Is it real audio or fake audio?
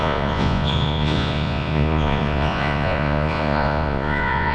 fake